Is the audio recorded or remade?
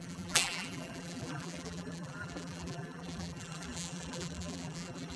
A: remade